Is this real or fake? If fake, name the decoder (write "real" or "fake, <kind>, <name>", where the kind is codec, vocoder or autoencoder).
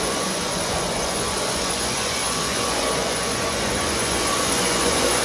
fake, vocoder, Vocos